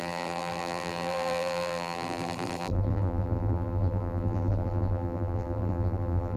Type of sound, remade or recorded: remade